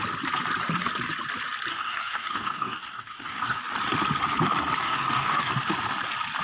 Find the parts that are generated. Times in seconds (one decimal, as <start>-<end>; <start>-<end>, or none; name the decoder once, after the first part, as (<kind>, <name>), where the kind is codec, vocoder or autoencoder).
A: 1.7-3.6 (codec, DAC); 4.8-5.5

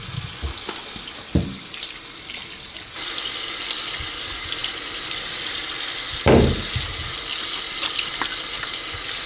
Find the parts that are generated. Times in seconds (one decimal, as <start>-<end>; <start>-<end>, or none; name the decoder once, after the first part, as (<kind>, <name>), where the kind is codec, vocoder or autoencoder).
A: none

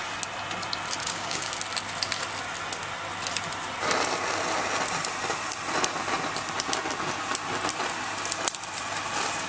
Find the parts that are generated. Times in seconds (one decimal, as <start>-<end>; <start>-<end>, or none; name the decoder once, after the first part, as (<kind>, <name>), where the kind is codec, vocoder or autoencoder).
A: 1.0-1.5 (codec, DAC)

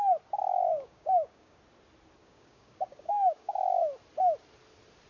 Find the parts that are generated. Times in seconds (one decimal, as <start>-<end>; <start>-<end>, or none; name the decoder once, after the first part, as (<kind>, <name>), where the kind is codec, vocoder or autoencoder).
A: 0.5-1.6 (codec, DAC); 2.2-3.8

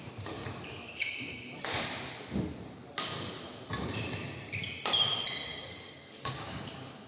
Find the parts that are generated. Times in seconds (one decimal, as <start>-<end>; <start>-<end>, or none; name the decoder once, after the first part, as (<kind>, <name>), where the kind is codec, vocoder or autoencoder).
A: 5.7-7.1 (codec, DAC)

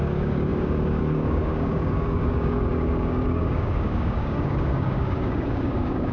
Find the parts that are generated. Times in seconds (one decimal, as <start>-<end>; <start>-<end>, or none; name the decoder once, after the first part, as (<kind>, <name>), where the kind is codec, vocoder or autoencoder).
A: 0.0-6.1 (codec, DAC)

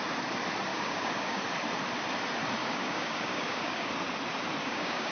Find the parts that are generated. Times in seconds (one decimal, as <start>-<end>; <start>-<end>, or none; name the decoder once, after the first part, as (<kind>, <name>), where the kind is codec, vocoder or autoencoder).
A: 0.7-1.4 (codec, DAC); 2.6-3.9; 4.6-5.1

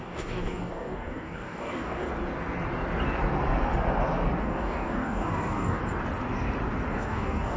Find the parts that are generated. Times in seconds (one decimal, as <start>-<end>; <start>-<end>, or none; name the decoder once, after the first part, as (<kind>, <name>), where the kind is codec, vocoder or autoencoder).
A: 0.0-2.1 (codec, DAC); 4.4-5.8; 6.9-7.6